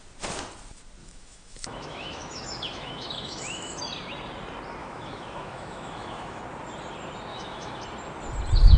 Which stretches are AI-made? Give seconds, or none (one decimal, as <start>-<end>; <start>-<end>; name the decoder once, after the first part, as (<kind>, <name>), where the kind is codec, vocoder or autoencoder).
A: 1.0-3.8 (autoencoder, DAC-VAE); 4.8-6.4; 7.3-7.8

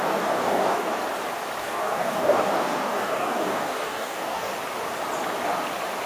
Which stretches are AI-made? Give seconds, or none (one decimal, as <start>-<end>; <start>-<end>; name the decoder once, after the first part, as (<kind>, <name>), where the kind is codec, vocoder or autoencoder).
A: 0.0-1.0 (codec, DAC); 1.6-4.5

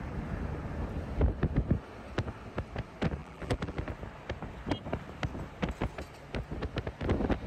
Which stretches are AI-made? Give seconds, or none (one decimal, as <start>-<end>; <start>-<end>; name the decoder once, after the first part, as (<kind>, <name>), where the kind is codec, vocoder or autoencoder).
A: 3.2-3.8 (vocoder, BigVGAN v2)

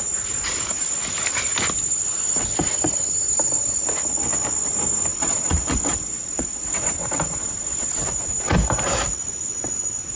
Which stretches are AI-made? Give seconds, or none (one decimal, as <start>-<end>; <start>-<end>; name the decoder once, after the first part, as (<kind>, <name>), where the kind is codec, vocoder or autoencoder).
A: 5.1-8.0 (vocoder, WaveNeXt)

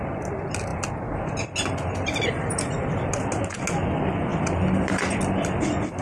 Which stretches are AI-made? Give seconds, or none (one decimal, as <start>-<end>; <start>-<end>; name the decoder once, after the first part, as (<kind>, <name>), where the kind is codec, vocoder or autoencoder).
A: none

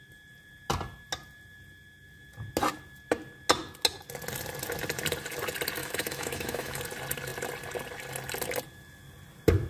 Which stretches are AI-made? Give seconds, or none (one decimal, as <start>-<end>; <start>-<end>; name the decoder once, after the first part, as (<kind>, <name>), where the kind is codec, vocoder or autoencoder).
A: 5.8-6.8 (autoencoder, DAC-VAE)